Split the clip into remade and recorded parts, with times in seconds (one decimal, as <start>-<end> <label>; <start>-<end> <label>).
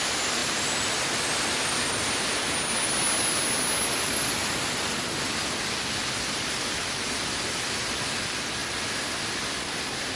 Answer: 0.0-10.2 recorded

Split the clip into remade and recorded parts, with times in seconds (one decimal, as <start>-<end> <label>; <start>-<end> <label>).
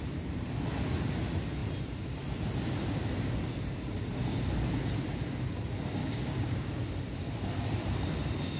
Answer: 0.0-6.0 recorded; 6.0-6.7 remade; 6.7-8.6 recorded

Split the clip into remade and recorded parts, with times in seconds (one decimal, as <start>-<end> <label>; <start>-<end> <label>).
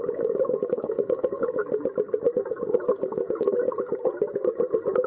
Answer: 0.0-1.6 remade; 1.6-5.1 recorded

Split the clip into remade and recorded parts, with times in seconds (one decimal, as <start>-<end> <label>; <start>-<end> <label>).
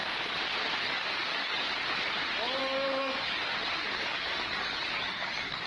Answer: 0.0-0.8 recorded; 0.8-1.7 remade; 1.7-2.6 recorded; 2.6-3.5 remade; 3.5-4.0 recorded; 4.0-5.7 remade